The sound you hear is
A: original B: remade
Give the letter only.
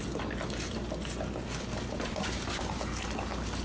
A